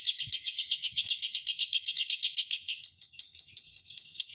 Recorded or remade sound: remade